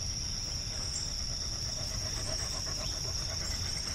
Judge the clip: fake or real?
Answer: real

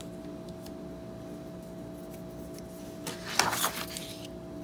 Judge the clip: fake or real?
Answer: real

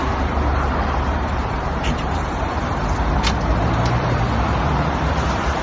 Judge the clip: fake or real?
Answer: fake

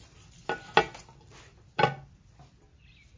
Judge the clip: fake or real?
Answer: real